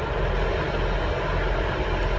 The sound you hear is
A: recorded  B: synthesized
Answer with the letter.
A